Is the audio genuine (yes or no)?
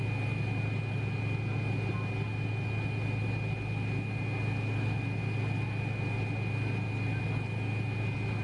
yes